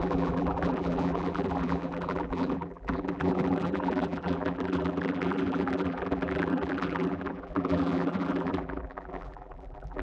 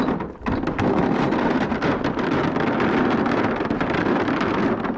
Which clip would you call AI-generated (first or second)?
first